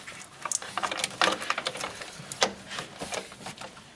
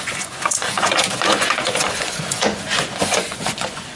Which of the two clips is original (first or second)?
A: first